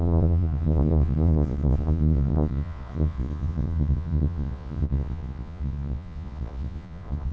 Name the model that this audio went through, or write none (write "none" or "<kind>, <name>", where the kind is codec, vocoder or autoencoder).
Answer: vocoder, Vocos